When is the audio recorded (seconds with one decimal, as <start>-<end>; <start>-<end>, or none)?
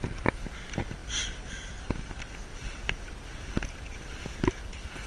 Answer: 0.0-5.1